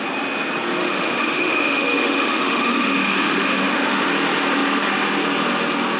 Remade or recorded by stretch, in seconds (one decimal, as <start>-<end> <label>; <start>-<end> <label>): 0.0-0.8 recorded; 0.8-4.1 remade; 4.1-6.0 recorded